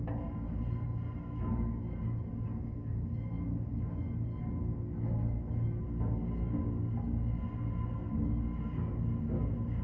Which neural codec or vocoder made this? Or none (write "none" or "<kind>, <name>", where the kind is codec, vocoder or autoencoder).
none